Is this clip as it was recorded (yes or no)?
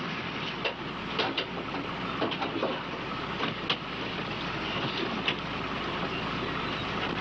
yes